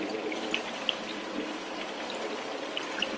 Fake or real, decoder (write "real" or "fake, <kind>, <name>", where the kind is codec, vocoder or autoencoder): real